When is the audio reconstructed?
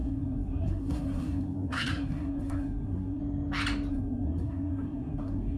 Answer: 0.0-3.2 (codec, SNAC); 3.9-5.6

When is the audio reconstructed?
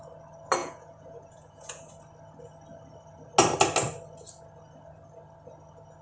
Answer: 0.6-1.9 (vocoder, Vocos)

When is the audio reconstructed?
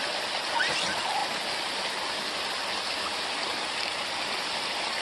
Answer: none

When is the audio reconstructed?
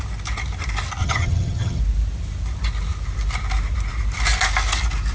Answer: 1.0-1.8 (vocoder, HiFi-GAN)